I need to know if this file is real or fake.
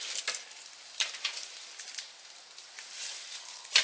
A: real